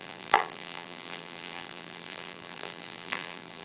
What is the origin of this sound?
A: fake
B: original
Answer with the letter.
A